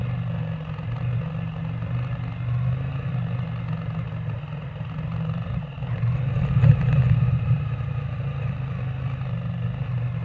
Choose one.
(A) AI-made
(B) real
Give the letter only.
B